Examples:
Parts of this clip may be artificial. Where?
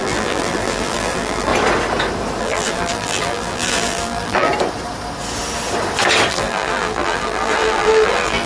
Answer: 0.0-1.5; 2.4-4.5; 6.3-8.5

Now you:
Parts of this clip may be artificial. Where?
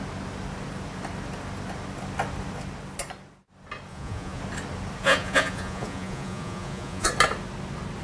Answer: 3.9-4.4; 5.0-7.1